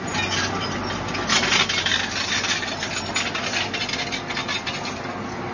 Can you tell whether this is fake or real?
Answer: real